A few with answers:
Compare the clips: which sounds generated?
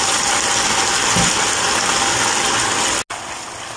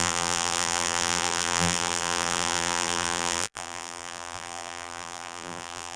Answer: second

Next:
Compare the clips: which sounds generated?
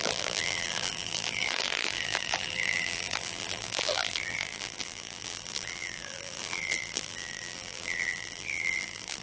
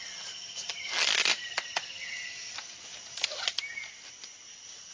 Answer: first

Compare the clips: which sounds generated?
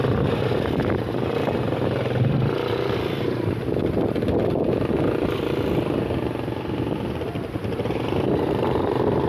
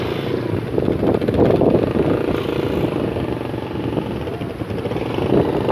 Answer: first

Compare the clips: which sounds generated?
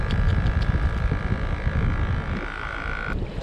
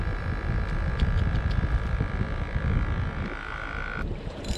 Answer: first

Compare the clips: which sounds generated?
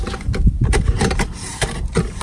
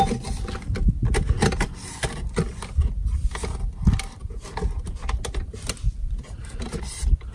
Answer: first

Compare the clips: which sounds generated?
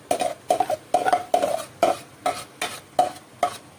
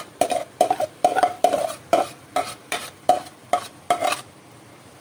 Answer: second